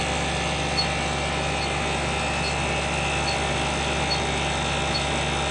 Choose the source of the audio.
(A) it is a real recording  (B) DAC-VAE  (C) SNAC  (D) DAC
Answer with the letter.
A